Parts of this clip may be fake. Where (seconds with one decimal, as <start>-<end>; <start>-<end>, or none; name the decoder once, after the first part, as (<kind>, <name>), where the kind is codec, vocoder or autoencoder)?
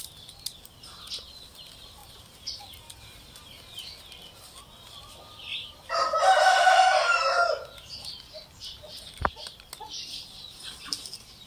2.0-2.6 (vocoder, BigVGAN v2); 5.5-7.5